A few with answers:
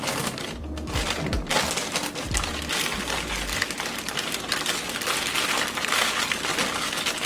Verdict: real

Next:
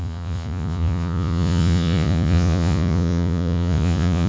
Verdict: fake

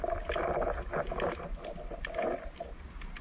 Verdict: real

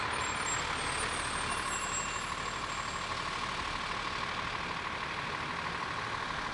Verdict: real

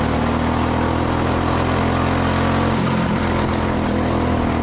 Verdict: real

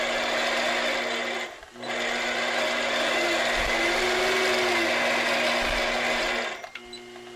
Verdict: real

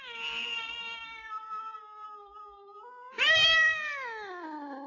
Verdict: real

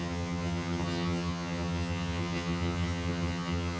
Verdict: fake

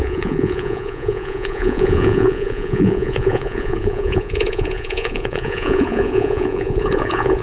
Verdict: fake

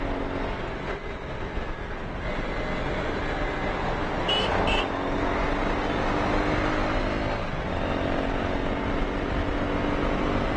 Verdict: real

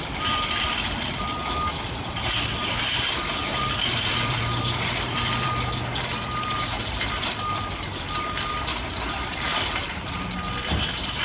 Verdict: fake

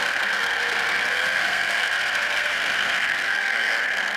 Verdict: fake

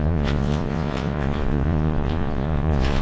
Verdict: fake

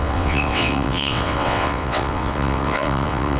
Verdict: fake